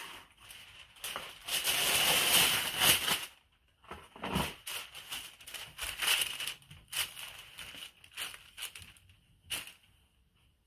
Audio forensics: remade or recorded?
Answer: recorded